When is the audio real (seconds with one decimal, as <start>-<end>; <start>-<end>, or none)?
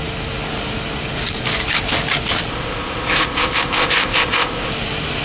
0.0-2.5; 4.7-5.2